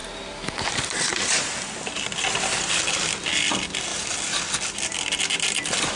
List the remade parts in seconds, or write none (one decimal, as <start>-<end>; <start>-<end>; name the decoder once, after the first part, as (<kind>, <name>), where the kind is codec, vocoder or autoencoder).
none